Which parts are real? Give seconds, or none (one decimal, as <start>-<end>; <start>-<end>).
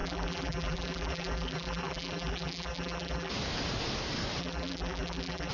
3.3-4.4